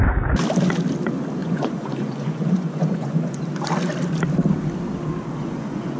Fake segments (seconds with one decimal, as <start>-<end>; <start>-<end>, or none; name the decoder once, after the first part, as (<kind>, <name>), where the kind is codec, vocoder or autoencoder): 1.4-3.4 (vocoder, Vocos); 5.4-6.0